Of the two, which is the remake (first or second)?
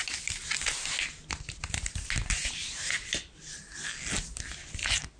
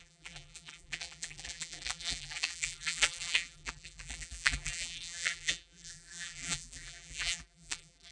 second